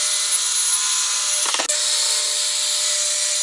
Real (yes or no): yes